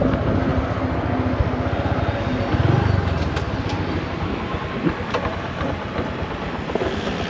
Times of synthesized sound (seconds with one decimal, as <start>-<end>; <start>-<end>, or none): none